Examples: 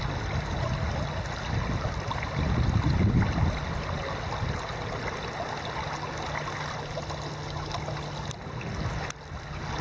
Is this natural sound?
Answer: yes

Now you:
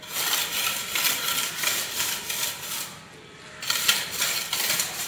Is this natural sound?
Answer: no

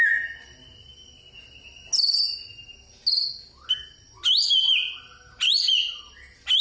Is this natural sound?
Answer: yes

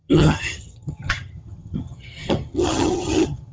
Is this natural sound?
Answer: no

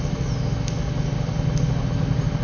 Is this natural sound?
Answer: yes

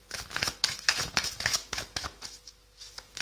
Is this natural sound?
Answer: no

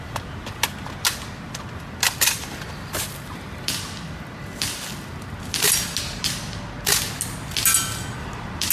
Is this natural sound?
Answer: yes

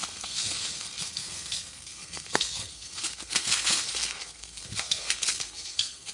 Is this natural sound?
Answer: no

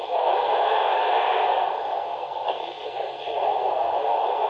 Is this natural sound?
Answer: no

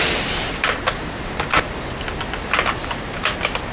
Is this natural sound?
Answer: yes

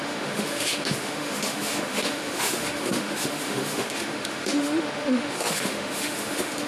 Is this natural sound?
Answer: no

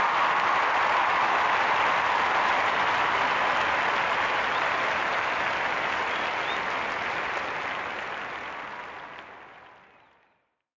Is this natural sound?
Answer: yes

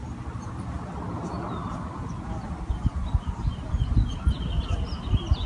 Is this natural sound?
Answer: yes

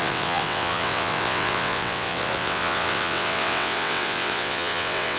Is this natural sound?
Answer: no